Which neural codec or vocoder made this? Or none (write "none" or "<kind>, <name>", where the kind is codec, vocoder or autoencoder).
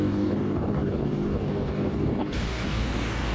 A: codec, DAC